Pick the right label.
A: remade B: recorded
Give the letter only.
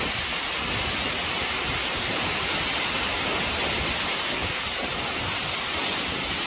B